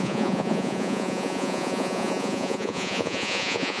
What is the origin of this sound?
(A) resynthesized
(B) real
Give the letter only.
A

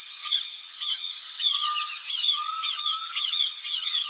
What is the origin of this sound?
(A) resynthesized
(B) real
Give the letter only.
A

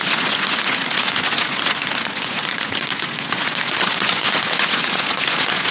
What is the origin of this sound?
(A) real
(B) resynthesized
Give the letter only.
B